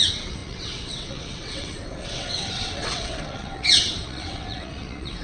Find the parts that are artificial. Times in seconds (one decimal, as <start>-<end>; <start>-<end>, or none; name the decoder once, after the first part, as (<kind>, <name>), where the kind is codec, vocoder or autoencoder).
0.0-5.2 (vocoder, WaveNeXt)